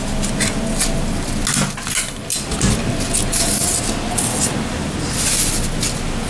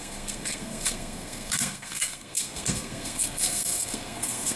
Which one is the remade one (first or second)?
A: second